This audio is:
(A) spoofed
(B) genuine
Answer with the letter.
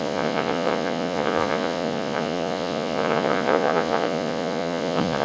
A